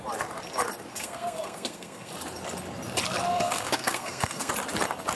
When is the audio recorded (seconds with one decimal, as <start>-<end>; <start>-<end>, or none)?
0.0-0.9; 2.1-3.3; 4.5-5.1